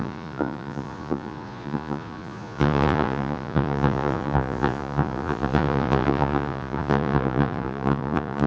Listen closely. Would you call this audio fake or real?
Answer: fake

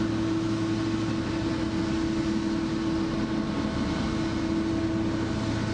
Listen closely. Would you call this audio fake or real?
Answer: real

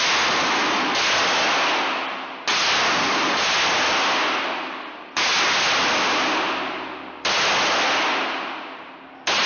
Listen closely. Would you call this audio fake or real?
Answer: real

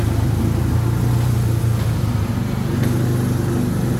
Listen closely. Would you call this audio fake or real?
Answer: real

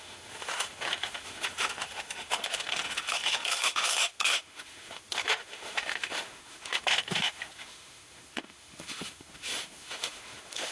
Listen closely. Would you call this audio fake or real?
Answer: fake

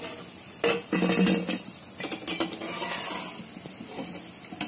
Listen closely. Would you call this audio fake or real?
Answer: real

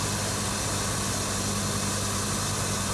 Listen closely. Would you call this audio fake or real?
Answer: real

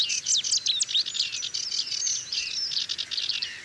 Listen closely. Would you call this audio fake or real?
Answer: real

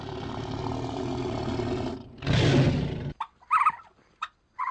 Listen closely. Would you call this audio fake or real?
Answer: real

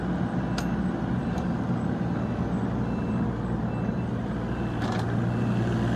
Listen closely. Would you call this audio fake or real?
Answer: real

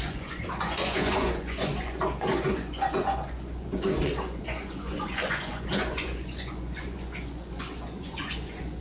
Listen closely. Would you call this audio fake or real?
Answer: fake